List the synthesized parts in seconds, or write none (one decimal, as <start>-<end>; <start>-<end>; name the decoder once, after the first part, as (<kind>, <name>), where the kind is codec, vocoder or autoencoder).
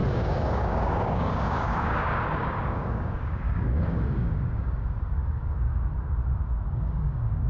0.0-5.7 (codec, DAC); 6.7-7.5